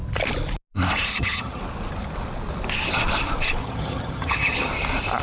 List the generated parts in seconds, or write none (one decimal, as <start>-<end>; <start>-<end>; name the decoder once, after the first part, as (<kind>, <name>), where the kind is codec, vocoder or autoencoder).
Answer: 1.1-1.6 (vocoder, HiFi-GAN); 3.6-4.7